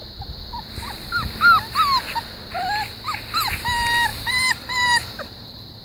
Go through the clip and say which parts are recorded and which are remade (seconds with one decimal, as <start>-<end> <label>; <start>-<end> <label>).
0.0-4.1 recorded; 4.1-5.8 remade